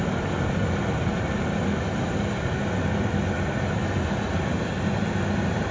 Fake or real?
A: real